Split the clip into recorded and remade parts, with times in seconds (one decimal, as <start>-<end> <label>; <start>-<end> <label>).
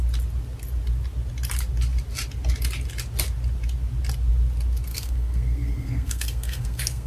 0.0-4.9 recorded; 4.9-7.1 remade